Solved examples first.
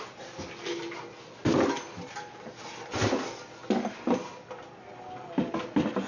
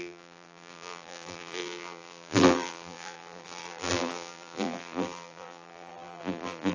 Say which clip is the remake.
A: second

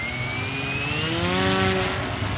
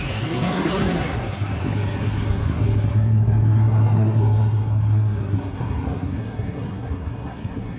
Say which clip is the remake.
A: second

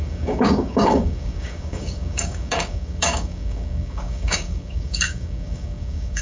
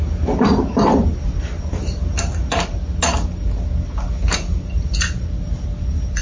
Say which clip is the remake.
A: first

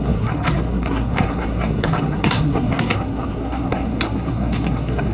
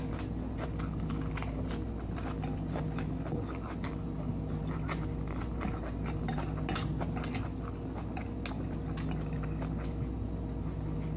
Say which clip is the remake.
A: first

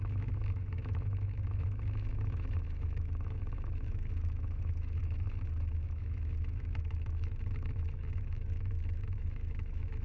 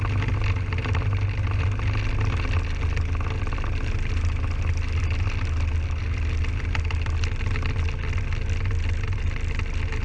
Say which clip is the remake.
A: first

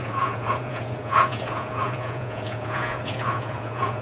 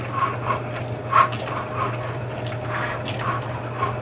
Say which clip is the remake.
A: first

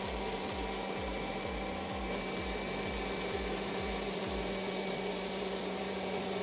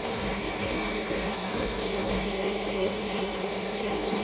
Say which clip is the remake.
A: second